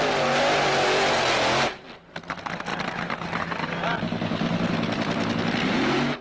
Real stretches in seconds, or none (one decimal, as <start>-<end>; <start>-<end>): 0.0-6.2